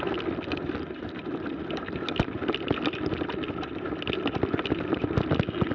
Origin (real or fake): real